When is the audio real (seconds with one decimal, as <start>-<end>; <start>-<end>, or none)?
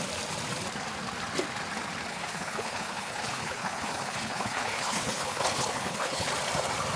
0.0-2.1; 6.3-7.0